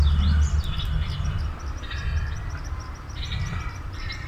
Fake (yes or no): yes